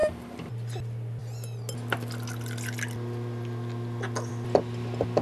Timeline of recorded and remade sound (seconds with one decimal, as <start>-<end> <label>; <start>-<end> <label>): 0.0-0.5 remade; 0.5-5.2 recorded